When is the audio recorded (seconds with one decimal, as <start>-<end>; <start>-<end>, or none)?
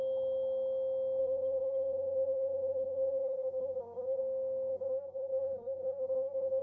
0.0-1.2; 4.2-4.7